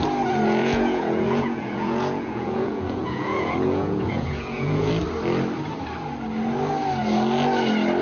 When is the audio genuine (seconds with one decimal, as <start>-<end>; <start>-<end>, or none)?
0.0-0.6; 4.9-8.0